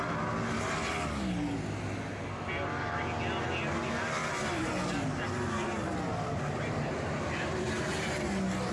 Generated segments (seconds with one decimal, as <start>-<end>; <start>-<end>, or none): 4.2-4.7; 6.1-7.7